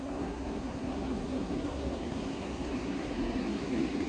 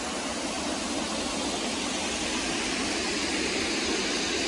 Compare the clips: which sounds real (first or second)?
second